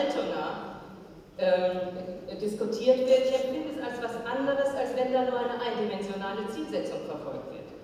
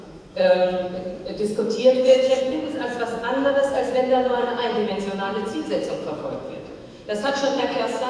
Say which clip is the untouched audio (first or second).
first